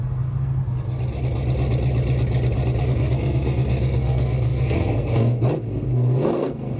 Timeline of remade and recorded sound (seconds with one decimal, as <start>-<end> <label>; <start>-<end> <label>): 0.0-0.6 remade; 0.6-2.8 recorded; 2.8-6.8 remade